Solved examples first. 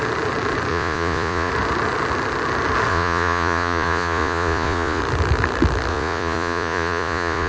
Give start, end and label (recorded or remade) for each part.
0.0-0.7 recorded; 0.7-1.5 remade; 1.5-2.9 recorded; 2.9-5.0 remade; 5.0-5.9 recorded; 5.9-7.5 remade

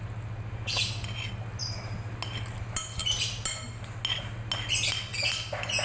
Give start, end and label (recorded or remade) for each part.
0.0-5.8 recorded

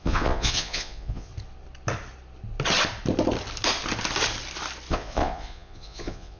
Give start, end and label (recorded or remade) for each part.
0.0-1.3 remade; 1.3-4.9 recorded; 4.9-6.4 remade

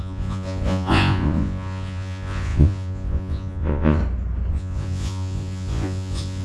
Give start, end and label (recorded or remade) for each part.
0.0-4.0 remade; 4.0-4.5 recorded; 4.5-6.4 remade